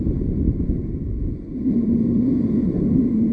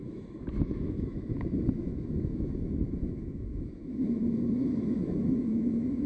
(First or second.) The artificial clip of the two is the second